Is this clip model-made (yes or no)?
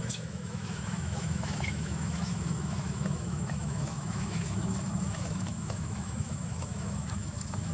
yes